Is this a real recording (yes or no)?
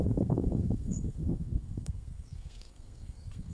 no